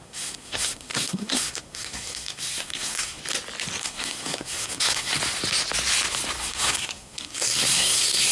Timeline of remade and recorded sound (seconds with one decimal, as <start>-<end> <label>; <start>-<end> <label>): 0.0-3.2 remade; 3.2-3.8 recorded; 3.8-5.1 remade; 5.1-6.4 recorded; 6.4-8.3 remade